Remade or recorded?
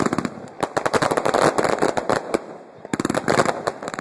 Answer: recorded